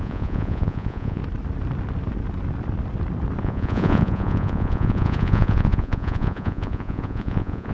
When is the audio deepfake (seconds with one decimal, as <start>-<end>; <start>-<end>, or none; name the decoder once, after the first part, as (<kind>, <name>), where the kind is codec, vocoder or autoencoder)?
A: 0.0-1.2 (vocoder, Vocos); 3.4-7.7